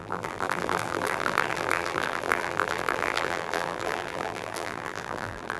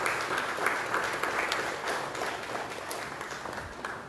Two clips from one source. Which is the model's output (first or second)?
first